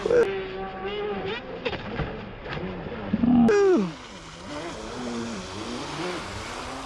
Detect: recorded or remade recorded